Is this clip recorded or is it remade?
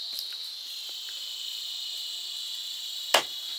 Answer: recorded